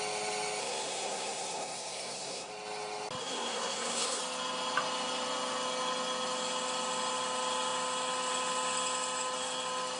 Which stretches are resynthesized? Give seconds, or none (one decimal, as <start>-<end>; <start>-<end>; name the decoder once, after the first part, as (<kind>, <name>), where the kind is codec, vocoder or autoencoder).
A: 0.6-2.5 (codec, SNAC); 3.2-4.2